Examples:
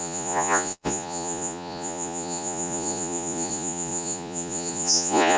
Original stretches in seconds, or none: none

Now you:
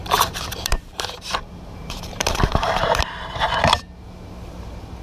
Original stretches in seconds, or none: 3.0-5.0